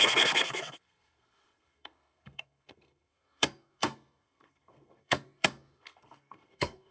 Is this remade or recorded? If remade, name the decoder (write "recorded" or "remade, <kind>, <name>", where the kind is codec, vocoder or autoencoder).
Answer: remade, codec, SNAC